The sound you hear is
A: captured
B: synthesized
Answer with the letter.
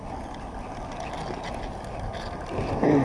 A